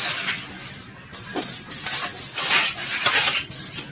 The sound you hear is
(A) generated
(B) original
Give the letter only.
B